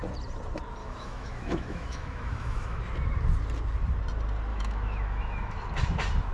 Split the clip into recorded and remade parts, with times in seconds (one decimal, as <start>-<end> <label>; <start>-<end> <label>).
0.0-0.8 recorded; 0.8-2.8 remade; 2.8-4.5 recorded; 4.5-5.7 remade; 5.7-6.3 recorded